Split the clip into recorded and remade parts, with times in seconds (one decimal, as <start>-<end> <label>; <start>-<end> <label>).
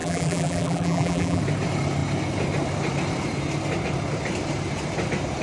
0.0-1.4 remade; 1.4-5.4 recorded